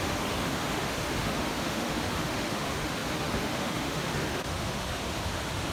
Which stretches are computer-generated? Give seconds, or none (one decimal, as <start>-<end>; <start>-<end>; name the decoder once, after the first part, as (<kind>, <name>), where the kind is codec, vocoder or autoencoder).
0.0-5.7 (autoencoder, DAC-VAE)